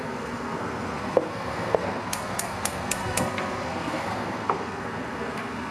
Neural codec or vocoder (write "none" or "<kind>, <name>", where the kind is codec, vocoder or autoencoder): codec, SNAC